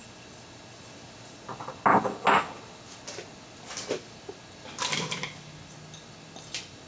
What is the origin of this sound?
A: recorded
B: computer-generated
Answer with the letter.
A